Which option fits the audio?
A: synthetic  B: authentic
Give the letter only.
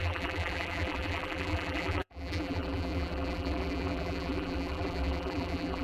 A